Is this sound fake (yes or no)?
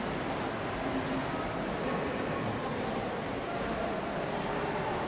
no